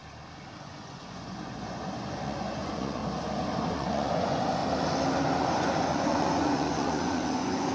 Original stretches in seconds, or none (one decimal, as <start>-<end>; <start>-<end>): 0.0-0.6; 3.0-3.7; 4.6-5.4